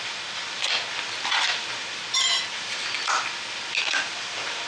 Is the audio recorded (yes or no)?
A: yes